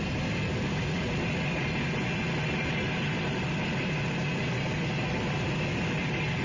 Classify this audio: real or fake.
real